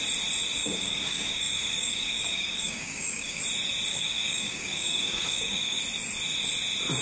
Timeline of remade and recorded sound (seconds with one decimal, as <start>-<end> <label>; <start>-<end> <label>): 0.0-0.6 recorded; 0.6-3.4 remade; 3.4-3.9 recorded; 3.9-5.8 remade; 5.8-7.0 recorded